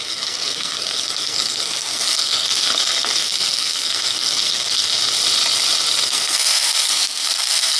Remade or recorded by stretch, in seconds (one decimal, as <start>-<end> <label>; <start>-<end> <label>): 0.0-4.9 remade; 4.9-6.0 recorded; 6.0-7.8 remade